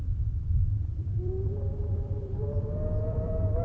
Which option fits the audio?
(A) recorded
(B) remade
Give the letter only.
B